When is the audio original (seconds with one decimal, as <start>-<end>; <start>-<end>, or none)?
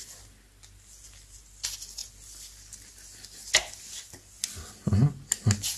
0.0-5.8